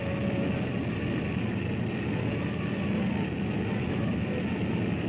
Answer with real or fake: real